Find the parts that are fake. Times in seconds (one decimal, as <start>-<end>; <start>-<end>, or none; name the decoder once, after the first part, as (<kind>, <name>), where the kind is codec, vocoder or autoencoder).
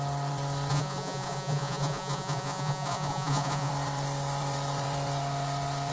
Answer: 0.7-3.7 (vocoder, Vocos)